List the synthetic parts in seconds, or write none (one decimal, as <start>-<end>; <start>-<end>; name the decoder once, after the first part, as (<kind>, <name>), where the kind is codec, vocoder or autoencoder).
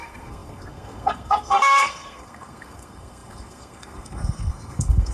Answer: 0.0-5.1 (codec, SNAC)